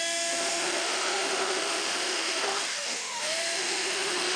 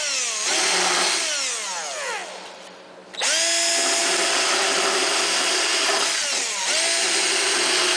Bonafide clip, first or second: second